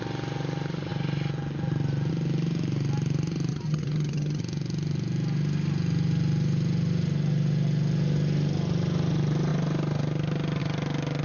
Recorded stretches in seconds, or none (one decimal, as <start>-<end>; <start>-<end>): 0.0-3.5; 4.4-11.2